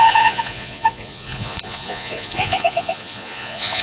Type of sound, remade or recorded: remade